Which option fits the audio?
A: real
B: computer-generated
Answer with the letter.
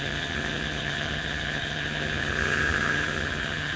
B